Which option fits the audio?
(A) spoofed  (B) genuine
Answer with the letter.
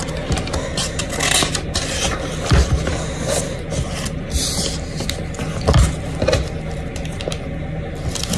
B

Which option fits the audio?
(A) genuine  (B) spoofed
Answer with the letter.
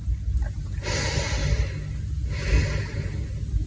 A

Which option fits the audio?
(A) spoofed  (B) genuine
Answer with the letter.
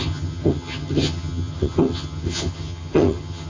A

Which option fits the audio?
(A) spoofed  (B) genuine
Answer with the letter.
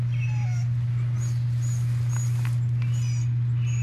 B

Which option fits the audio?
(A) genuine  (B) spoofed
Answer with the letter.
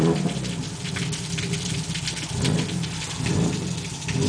A